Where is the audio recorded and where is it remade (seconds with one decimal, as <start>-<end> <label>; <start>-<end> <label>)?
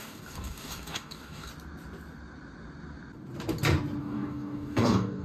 0.0-1.5 remade; 1.5-4.0 recorded; 4.0-5.2 remade